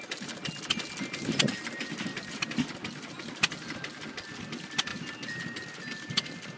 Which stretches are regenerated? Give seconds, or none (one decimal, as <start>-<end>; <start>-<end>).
none